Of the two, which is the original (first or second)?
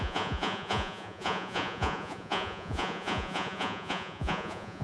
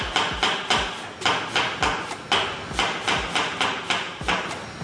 second